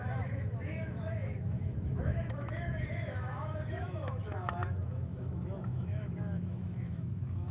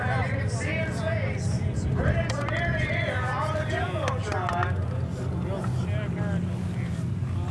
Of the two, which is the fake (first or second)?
first